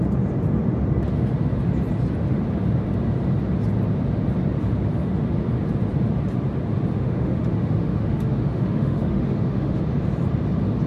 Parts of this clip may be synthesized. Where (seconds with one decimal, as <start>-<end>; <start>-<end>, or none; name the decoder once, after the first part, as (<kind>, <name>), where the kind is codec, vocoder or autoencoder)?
6.9-9.8 (autoencoder, DAC-VAE)